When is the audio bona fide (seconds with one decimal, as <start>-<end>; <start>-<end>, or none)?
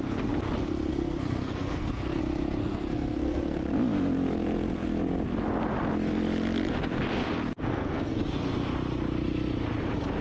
0.0-0.9; 2.2-2.6; 3.6-7.7; 8.5-10.2